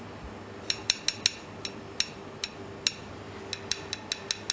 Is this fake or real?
real